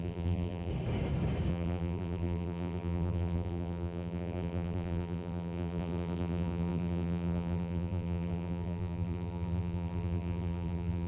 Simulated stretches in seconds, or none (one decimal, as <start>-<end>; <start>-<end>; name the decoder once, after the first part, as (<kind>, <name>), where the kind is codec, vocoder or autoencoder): 0.0-0.7 (vocoder, BigVGAN v2); 1.5-11.1